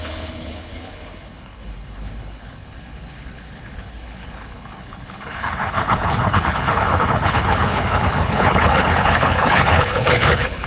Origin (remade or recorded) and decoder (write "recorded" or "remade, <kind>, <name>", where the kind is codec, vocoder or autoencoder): remade, codec, HILCodec